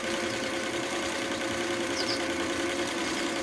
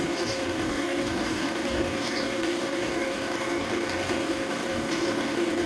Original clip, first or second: first